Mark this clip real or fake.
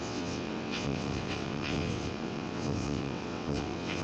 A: fake